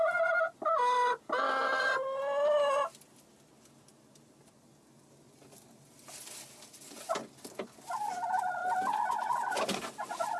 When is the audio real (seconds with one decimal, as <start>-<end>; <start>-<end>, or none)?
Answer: 0.0-10.4